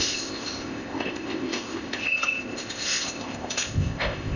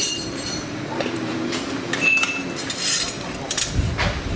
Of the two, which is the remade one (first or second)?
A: first